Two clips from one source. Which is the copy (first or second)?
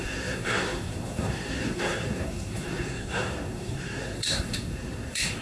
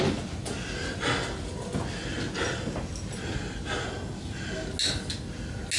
first